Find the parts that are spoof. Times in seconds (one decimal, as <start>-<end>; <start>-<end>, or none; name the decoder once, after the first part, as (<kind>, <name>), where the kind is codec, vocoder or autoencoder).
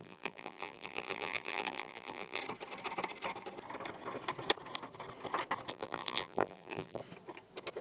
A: 0.0-2.4 (vocoder, BigVGAN v2); 5.7-7.0